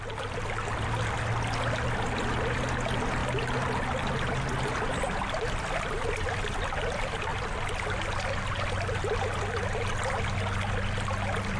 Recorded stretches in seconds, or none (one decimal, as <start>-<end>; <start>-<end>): 0.0-11.6